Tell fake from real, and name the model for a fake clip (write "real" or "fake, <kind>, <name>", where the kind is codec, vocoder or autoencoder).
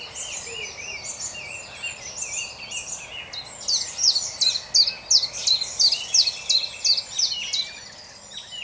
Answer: real